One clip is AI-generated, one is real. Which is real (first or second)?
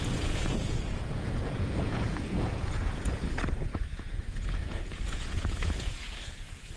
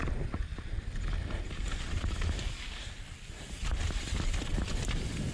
second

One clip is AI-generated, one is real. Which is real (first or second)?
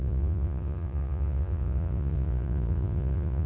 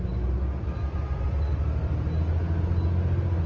second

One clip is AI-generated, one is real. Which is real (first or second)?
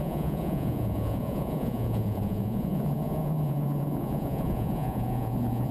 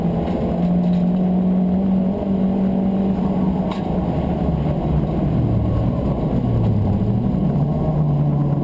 second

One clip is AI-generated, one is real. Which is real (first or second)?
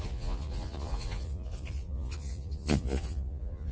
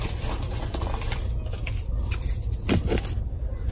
second